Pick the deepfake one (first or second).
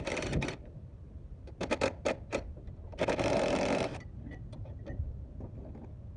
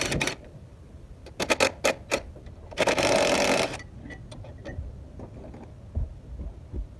first